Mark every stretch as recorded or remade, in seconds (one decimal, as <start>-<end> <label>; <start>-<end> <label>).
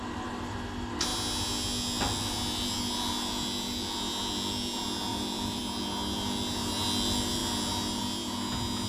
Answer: 0.0-5.1 recorded; 5.1-5.6 remade; 5.6-8.9 recorded